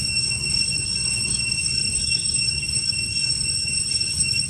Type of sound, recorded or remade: remade